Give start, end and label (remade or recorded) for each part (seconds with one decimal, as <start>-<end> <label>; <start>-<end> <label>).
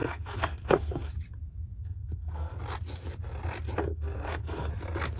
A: 0.0-1.1 remade; 1.1-1.8 recorded; 1.8-2.6 remade; 2.6-3.8 recorded; 3.8-4.7 remade; 4.7-5.2 recorded